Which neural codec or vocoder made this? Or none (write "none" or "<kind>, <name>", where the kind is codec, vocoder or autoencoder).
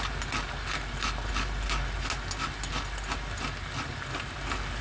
none